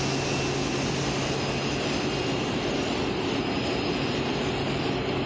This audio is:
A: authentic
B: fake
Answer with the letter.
A